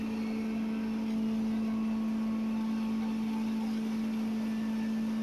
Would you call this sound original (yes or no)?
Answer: yes